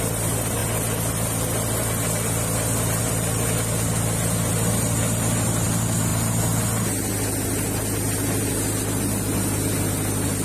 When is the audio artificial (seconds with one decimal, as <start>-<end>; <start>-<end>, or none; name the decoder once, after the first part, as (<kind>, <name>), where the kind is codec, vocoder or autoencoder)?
none